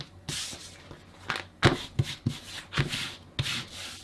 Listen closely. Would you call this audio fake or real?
real